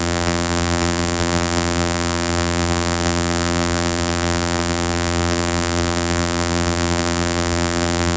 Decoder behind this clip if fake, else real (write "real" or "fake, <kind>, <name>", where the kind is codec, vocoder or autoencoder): fake, vocoder, BigVGAN v2